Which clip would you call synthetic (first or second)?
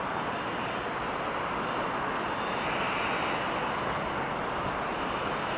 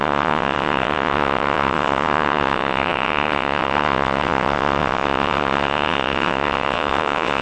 second